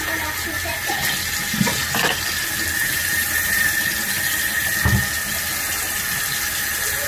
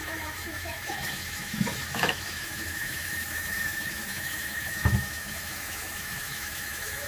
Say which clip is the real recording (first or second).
first